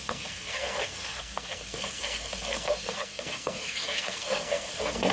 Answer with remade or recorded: remade